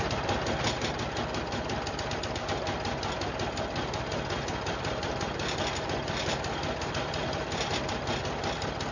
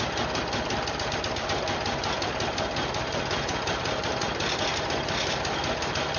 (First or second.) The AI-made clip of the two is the second